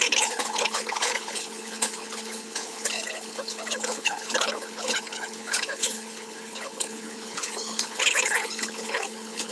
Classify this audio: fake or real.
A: fake